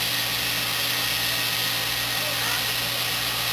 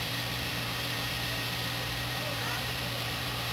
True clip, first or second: first